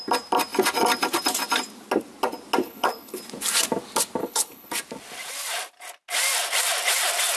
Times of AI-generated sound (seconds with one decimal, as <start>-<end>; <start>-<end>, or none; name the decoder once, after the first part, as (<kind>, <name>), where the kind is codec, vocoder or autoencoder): 2.6-3.2 (codec, HILCodec); 4.2-4.7